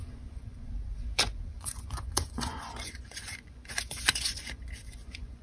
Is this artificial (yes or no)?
yes